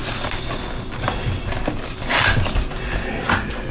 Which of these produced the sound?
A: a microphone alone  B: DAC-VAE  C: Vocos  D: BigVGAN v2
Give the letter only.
A